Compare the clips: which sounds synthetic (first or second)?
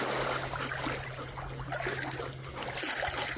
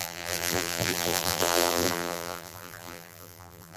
second